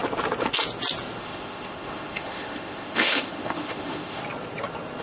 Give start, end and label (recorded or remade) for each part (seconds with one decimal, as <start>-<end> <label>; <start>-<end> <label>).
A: 0.0-1.2 recorded; 1.2-4.2 remade; 4.2-5.0 recorded